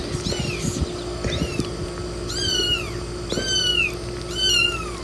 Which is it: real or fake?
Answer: real